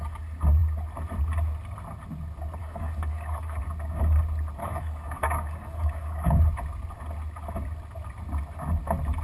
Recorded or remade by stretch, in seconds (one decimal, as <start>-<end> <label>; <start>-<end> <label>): 0.0-2.6 recorded; 2.6-3.6 remade; 3.6-4.6 recorded; 4.6-6.4 remade; 6.4-9.2 recorded